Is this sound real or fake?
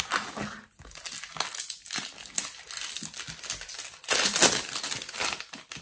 real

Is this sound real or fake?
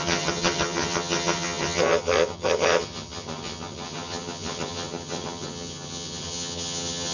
fake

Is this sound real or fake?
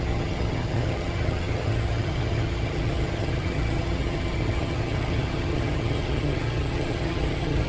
fake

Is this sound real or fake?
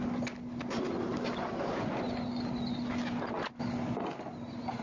real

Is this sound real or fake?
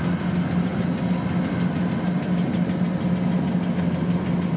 real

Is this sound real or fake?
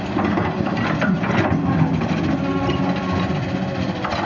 real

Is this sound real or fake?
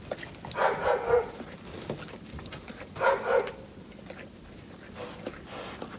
real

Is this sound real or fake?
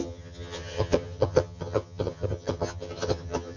fake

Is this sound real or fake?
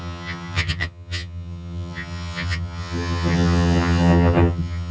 fake